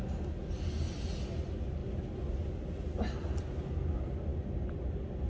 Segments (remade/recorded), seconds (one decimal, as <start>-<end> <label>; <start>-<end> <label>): 0.0-5.3 recorded